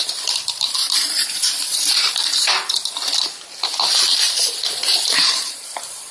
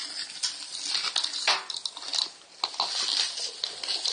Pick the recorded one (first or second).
second